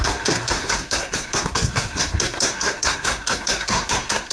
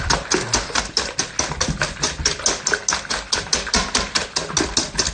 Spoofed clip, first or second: first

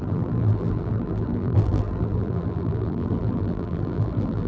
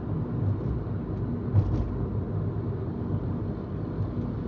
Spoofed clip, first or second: first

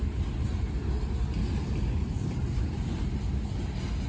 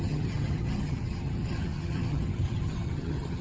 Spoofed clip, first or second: second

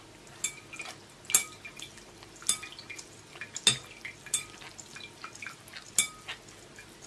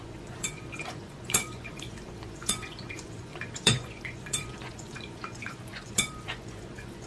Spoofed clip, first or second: second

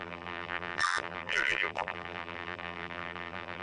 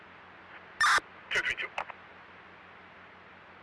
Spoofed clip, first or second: first